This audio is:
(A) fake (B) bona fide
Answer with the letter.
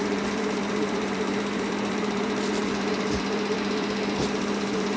A